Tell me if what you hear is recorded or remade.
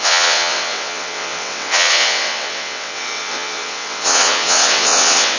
remade